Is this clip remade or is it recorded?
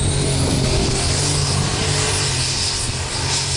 recorded